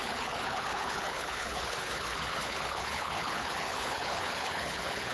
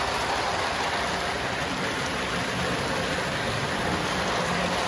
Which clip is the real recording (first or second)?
second